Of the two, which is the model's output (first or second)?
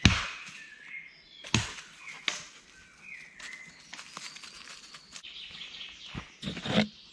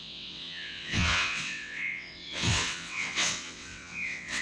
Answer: second